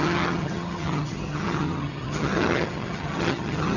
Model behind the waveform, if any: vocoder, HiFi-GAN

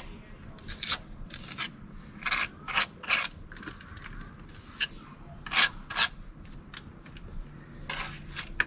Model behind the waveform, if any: none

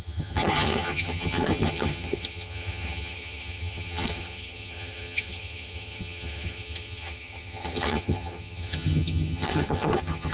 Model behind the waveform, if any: vocoder, HiFi-GAN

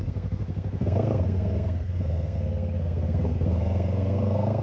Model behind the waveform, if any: codec, SNAC